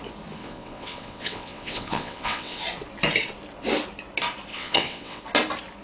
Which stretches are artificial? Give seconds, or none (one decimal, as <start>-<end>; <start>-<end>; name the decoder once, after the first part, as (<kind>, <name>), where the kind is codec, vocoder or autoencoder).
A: 0.4-2.6 (vocoder, WaveNeXt); 4.5-5.2